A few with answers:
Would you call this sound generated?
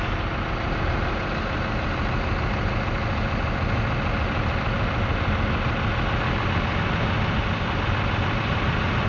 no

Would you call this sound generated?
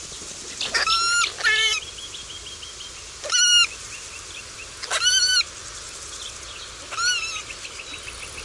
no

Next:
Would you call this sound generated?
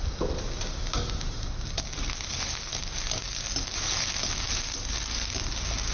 no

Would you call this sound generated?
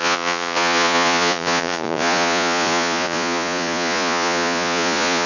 yes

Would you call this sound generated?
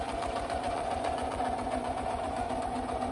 yes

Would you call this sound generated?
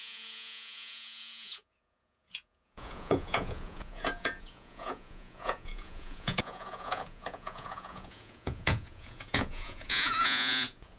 yes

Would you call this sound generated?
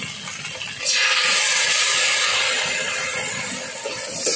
no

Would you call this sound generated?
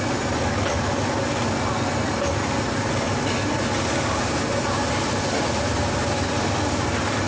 no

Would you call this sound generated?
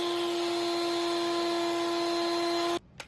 no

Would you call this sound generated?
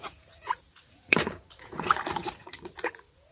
yes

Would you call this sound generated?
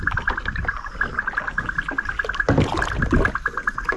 no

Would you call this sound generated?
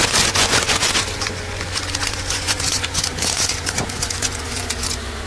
yes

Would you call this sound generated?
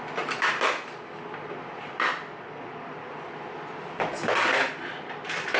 no